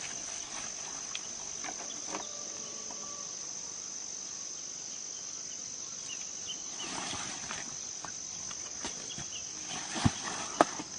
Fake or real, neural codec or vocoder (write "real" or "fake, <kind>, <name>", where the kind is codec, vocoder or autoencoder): real